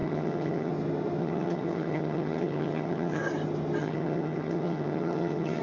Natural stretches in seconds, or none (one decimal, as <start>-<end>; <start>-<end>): 0.7-1.2; 3.2-3.8